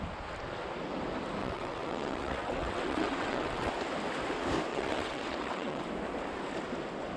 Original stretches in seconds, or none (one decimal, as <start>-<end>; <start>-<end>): 0.0-1.4; 3.7-4.7; 5.8-7.2